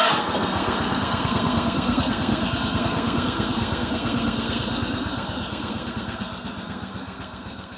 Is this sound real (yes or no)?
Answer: no